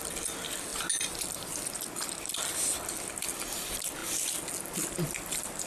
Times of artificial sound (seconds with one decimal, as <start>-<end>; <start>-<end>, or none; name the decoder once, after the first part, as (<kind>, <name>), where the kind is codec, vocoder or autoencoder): none